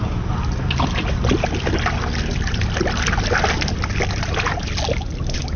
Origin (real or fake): real